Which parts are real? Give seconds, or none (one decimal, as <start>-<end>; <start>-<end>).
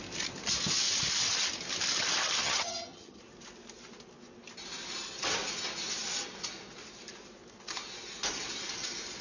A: 0.0-2.4; 3.2-9.2